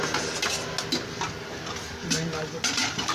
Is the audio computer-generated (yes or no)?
no